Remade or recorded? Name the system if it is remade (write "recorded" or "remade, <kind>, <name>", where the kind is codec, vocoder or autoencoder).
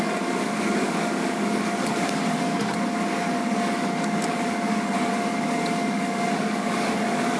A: remade, codec, DAC